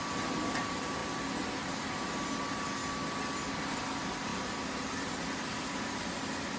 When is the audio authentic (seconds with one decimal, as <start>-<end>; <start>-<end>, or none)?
1.0-2.4; 2.8-3.6; 4.3-4.9